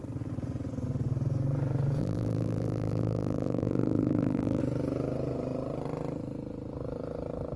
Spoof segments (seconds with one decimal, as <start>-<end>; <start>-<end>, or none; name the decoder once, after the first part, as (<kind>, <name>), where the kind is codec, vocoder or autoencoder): 2.0-4.6 (vocoder, BigVGAN v2)